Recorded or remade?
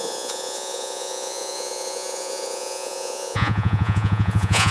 remade